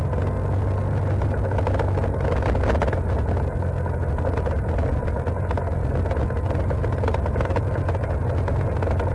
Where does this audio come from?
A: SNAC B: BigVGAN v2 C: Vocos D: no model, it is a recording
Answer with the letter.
D